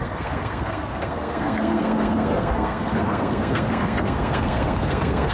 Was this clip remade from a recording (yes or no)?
yes